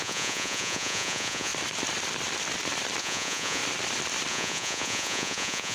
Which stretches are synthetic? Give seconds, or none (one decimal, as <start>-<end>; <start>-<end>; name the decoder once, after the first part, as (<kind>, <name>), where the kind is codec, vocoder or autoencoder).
0.0-1.5 (vocoder, Vocos); 3.0-3.6; 4.3-5.7